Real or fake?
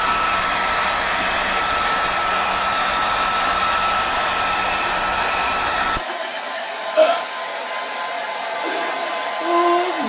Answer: real